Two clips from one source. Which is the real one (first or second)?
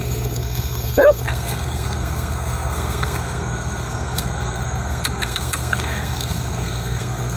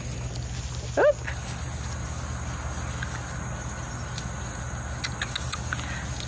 second